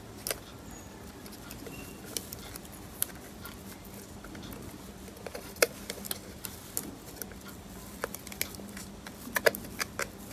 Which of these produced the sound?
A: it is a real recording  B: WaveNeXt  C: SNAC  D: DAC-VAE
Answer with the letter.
A